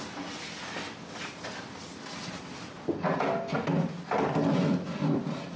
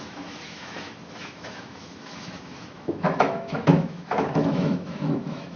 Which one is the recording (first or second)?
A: first